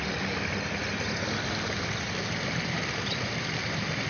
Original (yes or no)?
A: yes